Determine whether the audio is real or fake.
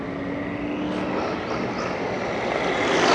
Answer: real